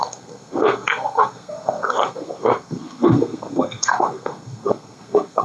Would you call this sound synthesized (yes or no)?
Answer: yes